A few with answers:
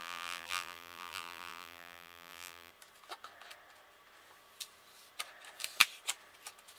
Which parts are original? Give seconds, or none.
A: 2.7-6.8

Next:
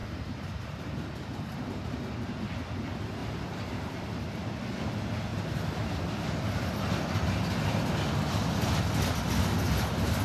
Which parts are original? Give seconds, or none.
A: 1.8-3.2; 4.2-10.2

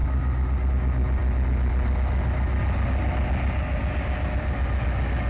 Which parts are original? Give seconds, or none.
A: 0.0-5.3

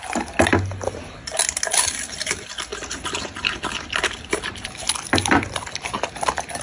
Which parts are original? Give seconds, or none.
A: 0.0-6.6